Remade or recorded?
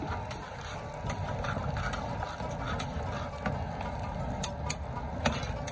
recorded